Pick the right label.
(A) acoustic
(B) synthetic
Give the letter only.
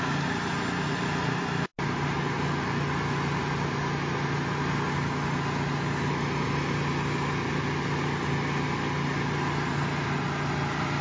A